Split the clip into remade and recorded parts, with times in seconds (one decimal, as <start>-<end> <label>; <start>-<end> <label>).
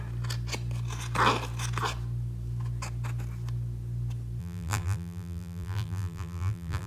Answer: 0.0-4.4 recorded; 4.4-6.9 remade